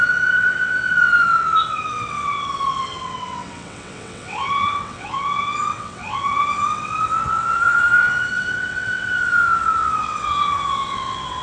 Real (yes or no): no